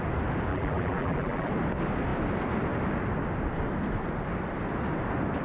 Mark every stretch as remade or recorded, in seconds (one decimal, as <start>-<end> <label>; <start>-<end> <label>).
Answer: 0.0-0.5 recorded; 0.5-1.5 remade; 1.5-5.4 recorded